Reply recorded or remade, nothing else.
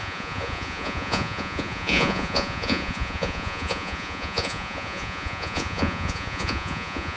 remade